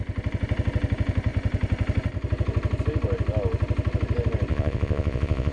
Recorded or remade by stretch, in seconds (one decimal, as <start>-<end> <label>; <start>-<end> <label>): 0.0-4.5 recorded; 4.5-5.5 remade